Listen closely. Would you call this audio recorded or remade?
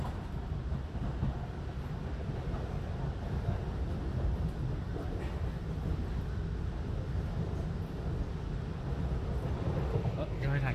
recorded